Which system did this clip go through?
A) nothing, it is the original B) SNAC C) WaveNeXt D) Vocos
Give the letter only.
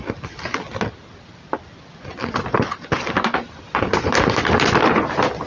A